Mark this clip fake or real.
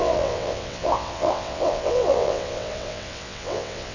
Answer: fake